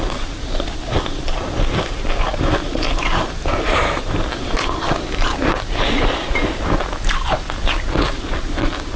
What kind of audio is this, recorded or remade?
recorded